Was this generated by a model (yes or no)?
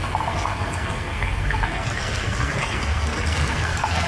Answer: yes